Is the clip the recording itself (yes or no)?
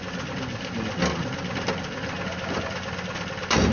yes